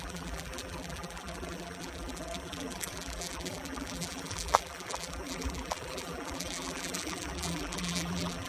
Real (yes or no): no